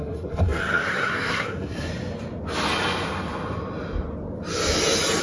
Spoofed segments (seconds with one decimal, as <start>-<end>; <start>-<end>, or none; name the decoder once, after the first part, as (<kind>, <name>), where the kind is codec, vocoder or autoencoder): 0.0-1.9 (codec, SNAC)